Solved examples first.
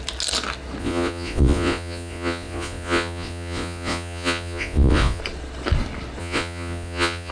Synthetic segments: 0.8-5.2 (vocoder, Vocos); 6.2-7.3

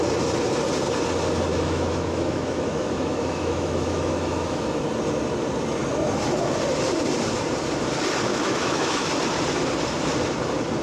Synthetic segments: 1.5-4.8 (autoencoder, DAC-VAE); 8.3-9.2